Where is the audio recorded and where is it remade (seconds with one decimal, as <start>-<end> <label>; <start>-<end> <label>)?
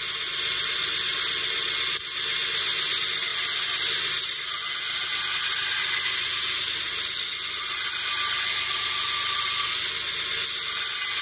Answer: 0.0-11.2 recorded